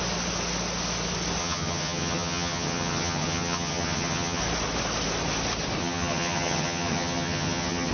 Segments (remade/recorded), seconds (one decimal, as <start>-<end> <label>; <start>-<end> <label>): 0.0-1.4 recorded; 1.4-4.4 remade; 4.4-5.8 recorded; 5.8-7.9 remade